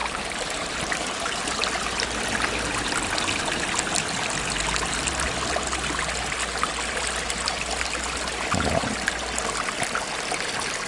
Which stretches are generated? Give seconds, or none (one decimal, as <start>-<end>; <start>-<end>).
0.0-1.5

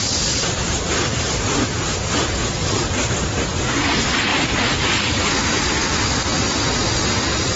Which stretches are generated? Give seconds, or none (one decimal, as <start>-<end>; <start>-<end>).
none

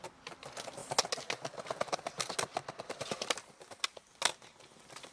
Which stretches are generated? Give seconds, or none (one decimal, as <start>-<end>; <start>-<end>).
none